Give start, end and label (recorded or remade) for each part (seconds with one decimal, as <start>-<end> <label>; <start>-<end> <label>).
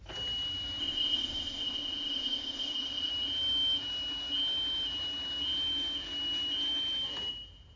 0.0-0.8 recorded; 0.8-3.1 remade; 3.1-7.8 recorded